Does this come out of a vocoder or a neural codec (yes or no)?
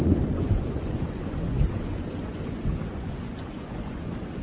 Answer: yes